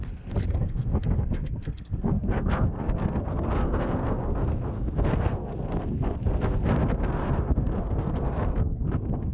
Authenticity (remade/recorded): remade